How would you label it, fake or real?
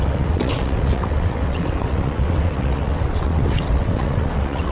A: fake